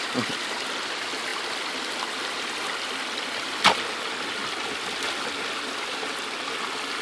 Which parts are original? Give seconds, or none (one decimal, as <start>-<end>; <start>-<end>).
0.0-7.0